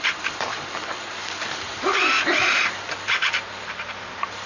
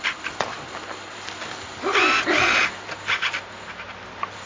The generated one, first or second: first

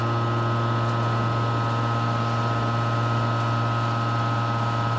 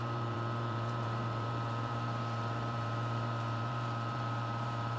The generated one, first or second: second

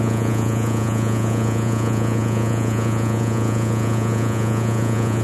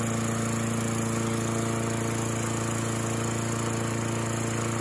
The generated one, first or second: first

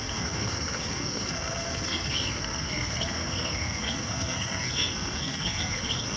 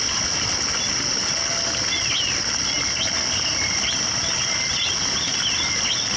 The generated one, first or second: first